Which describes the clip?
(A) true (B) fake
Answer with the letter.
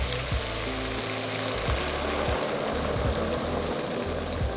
A